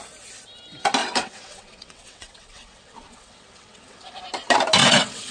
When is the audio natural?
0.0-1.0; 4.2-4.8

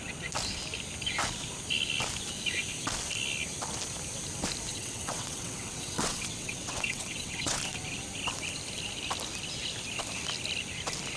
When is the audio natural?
0.0-4.7; 7.6-11.2

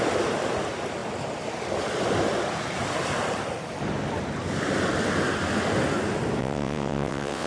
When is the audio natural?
0.0-6.4

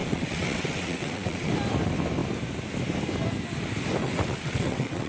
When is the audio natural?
1.5-4.0